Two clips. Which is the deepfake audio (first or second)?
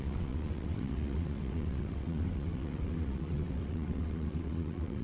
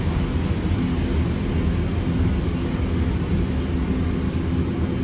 first